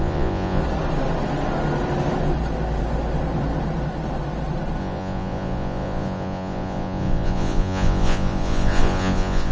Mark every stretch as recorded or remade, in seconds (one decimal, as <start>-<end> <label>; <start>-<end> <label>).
0.0-0.6 remade; 0.6-4.8 recorded; 4.8-9.5 remade